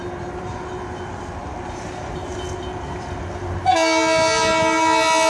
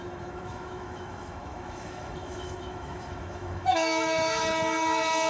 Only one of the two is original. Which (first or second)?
first